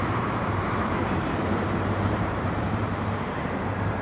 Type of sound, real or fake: fake